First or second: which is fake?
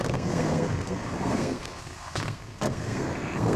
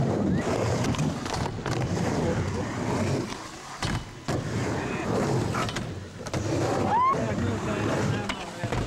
first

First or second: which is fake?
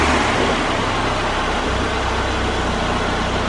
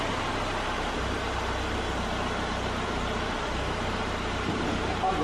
second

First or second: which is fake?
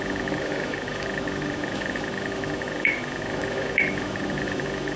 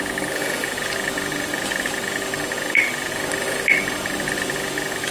first